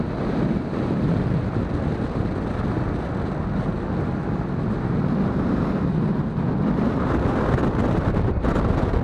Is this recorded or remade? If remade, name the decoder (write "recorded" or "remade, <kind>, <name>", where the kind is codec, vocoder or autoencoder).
recorded